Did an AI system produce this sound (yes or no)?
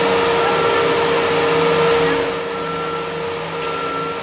no